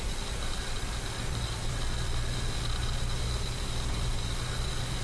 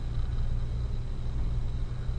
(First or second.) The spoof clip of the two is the first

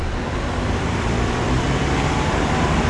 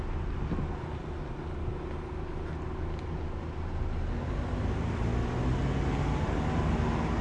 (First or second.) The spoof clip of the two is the first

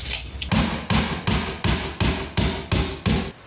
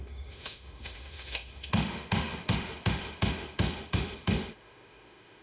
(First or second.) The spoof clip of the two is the second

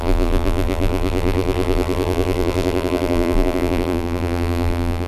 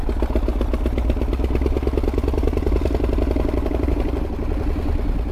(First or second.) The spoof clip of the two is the first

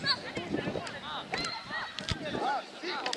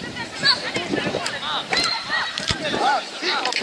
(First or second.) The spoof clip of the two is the second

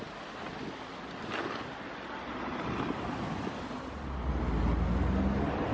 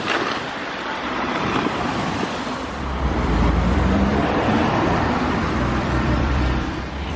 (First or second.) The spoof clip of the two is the second